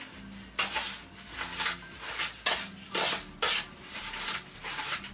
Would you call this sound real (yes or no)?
yes